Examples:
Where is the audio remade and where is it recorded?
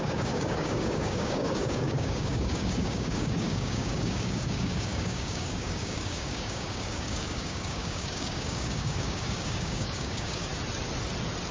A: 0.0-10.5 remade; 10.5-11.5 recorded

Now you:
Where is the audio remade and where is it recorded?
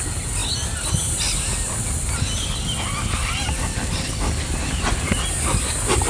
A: 0.0-6.1 recorded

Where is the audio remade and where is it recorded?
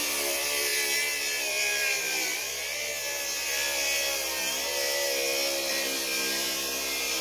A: 0.0-0.7 remade; 0.7-1.4 recorded; 1.4-2.9 remade; 2.9-5.7 recorded; 5.7-7.2 remade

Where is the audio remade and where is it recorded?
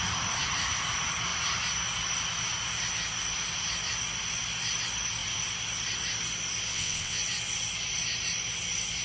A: 0.0-6.7 recorded; 6.7-7.2 remade; 7.2-9.0 recorded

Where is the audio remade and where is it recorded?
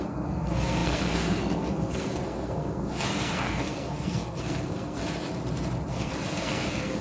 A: 0.0-5.0 remade; 5.0-5.9 recorded; 5.9-7.0 remade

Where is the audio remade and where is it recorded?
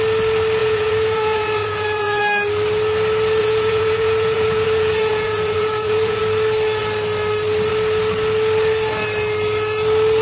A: 0.0-0.6 recorded; 0.6-2.2 remade; 2.2-3.4 recorded; 3.4-6.2 remade; 6.2-10.2 recorded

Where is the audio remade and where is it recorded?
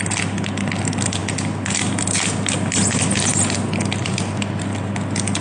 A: 0.0-5.4 recorded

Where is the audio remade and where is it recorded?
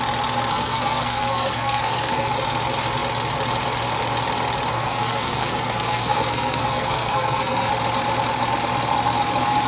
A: 0.0-0.5 recorded; 0.5-2.3 remade; 2.3-4.7 recorded; 4.7-7.7 remade; 7.7-9.7 recorded